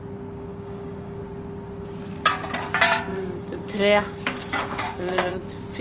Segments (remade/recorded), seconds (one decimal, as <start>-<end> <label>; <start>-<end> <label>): 0.0-0.5 recorded; 0.5-1.2 remade; 1.2-3.1 recorded; 3.1-5.3 remade; 5.3-5.8 recorded